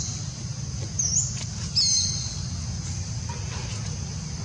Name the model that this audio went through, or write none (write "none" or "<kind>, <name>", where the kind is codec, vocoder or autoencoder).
none